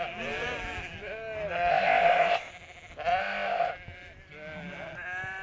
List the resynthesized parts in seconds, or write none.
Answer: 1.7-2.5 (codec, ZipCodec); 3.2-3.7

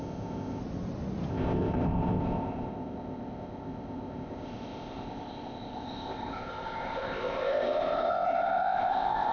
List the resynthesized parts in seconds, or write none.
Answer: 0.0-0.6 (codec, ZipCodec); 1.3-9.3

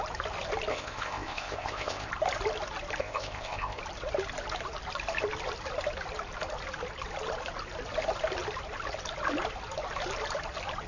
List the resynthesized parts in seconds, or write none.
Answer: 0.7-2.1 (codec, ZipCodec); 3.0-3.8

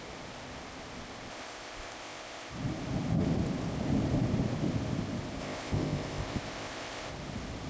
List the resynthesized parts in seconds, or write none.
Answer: 1.3-2.5 (codec, ZipCodec); 5.4-7.1